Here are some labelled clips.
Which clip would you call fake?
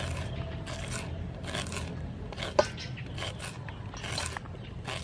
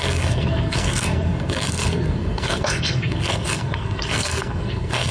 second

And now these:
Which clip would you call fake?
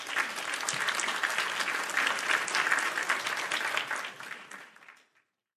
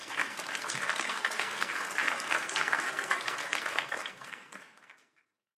second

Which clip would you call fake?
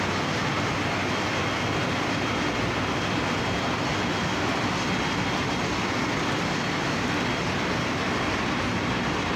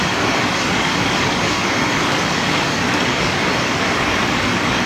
second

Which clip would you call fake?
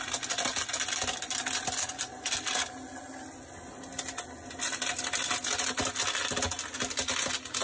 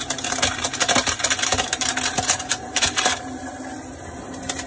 second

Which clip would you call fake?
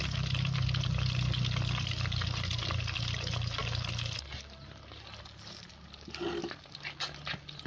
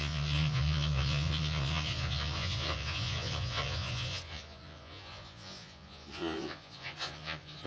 second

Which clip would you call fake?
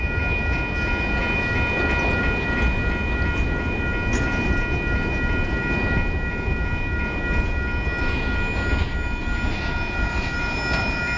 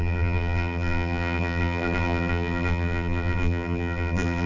second